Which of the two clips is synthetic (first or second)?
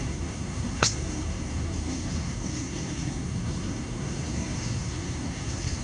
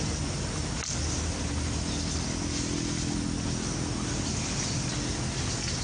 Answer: first